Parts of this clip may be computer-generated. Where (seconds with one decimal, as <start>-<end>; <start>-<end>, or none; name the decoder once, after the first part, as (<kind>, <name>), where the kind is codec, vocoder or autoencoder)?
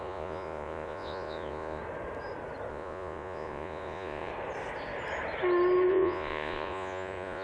0.0-1.8 (vocoder, Vocos); 2.7-4.3; 5.9-7.4